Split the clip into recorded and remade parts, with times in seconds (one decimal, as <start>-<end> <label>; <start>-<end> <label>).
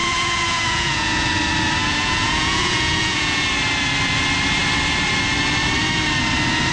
0.0-1.3 remade; 1.3-1.8 recorded; 1.8-3.4 remade; 3.4-6.7 recorded